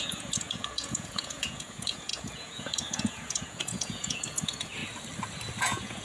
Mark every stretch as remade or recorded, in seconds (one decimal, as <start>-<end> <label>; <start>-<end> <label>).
0.0-4.8 remade; 4.8-5.6 recorded; 5.6-6.0 remade